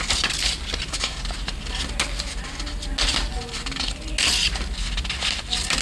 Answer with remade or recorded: recorded